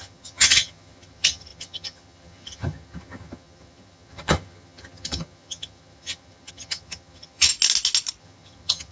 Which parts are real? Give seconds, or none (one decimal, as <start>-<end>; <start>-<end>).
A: 7.5-8.2